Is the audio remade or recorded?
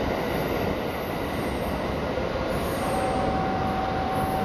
recorded